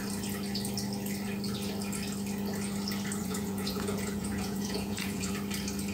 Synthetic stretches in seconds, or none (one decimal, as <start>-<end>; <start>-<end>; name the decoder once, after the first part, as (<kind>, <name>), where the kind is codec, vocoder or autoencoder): 3.2-5.3 (vocoder, Vocos)